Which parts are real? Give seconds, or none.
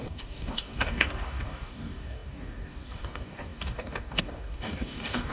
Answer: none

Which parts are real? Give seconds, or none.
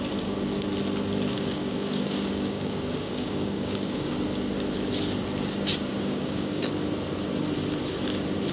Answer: 0.0-1.3; 4.1-5.9; 6.7-8.5